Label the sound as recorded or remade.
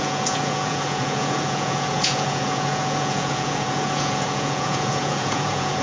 remade